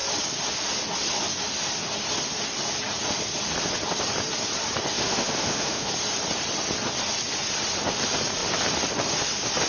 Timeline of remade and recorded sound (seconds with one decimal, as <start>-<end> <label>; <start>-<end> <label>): 0.0-5.0 recorded; 5.0-5.9 remade; 5.9-9.7 recorded